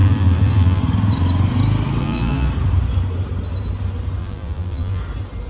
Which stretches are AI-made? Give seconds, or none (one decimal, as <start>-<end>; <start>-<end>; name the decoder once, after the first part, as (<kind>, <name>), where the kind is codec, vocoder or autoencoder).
0.0-0.8 (vocoder, BigVGAN v2); 2.0-2.5; 4.2-5.0